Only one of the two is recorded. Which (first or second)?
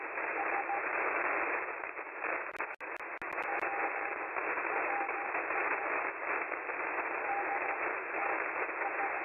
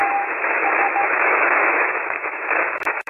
first